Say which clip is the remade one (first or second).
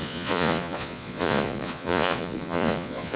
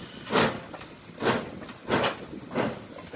first